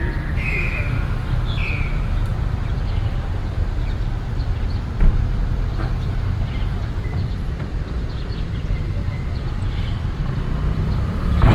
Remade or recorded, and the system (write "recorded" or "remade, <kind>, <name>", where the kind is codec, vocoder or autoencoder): remade, vocoder, BigVGAN v2